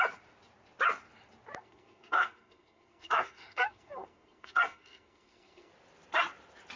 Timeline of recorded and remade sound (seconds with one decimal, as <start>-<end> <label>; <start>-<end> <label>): 0.0-1.6 recorded; 1.6-5.7 remade; 5.7-6.8 recorded